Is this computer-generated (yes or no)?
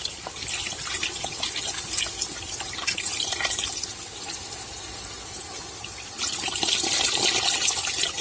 no